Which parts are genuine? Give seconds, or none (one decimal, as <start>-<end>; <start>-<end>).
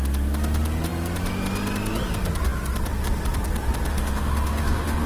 0.0-3.9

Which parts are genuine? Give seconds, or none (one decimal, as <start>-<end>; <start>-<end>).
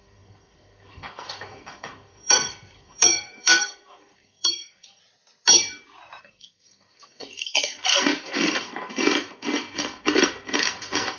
5.0-6.2